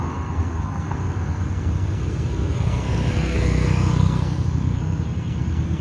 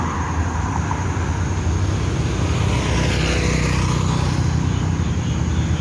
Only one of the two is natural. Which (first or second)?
second